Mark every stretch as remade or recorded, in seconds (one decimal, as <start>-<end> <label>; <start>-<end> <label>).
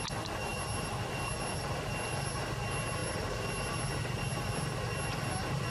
0.0-5.7 recorded